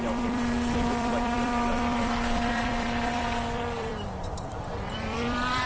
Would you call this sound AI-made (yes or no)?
yes